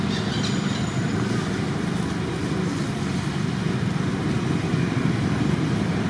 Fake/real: real